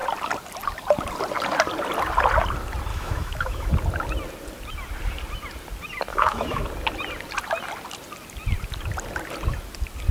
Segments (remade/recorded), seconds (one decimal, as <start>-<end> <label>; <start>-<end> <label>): 0.0-2.9 recorded; 2.9-3.7 remade; 3.7-6.1 recorded; 6.1-6.6 remade; 6.6-10.1 recorded